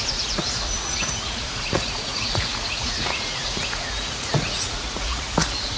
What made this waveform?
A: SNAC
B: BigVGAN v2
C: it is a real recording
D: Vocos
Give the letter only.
D